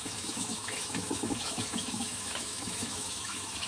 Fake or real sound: fake